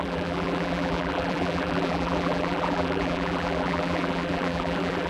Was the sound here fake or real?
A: fake